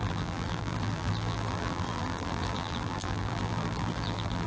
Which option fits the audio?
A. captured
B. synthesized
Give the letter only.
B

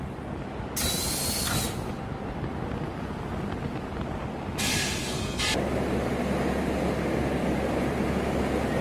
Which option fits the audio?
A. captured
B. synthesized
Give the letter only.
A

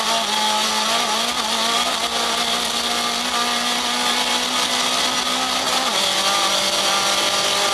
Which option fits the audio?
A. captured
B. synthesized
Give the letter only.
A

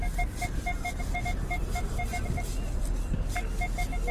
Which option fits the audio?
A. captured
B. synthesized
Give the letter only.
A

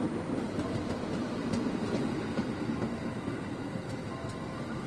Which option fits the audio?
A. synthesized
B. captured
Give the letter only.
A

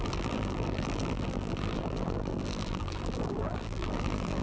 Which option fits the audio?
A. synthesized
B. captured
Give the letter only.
A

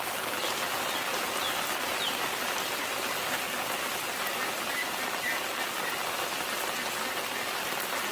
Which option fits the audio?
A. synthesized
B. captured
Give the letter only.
B